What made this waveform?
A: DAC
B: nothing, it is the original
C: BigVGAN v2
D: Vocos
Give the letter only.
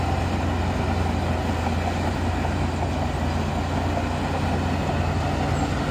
B